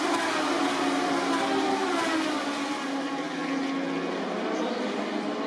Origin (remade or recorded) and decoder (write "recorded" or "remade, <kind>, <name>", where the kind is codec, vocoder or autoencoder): recorded